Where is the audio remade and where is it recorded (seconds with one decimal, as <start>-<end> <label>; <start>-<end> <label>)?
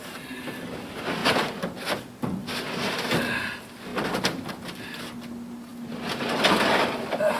0.0-2.4 recorded; 2.4-3.5 remade; 3.5-7.4 recorded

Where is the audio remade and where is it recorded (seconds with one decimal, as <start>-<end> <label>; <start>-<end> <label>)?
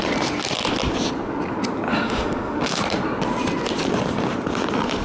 0.0-1.9 recorded; 1.9-2.8 remade; 2.8-5.0 recorded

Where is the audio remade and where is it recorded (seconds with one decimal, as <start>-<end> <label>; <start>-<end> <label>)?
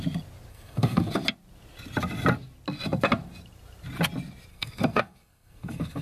0.0-0.5 recorded; 0.5-1.1 remade; 1.1-4.5 recorded; 4.5-6.0 remade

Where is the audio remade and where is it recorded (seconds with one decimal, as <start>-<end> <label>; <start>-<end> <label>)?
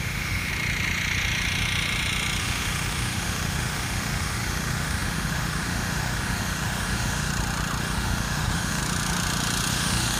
0.0-0.5 remade; 0.5-2.4 recorded; 2.4-7.3 remade; 7.3-7.8 recorded; 7.8-8.8 remade; 8.8-9.7 recorded; 9.7-10.2 remade